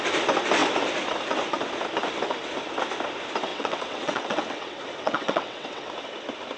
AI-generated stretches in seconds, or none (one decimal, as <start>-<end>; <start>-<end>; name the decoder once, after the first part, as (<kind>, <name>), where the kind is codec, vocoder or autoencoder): 3.5-5.9 (vocoder, WaveNeXt)